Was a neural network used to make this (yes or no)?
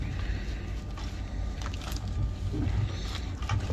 no